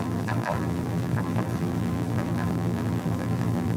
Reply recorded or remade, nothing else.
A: remade